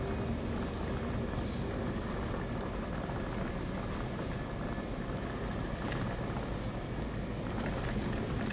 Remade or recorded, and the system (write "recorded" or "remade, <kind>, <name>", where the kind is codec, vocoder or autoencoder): recorded